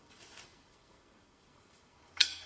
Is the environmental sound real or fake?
fake